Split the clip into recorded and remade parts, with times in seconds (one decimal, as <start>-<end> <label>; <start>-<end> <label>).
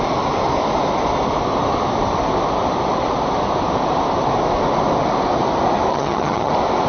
0.0-5.9 recorded; 5.9-6.5 remade; 6.5-6.9 recorded